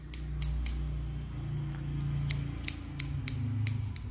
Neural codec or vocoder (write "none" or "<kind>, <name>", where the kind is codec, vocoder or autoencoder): none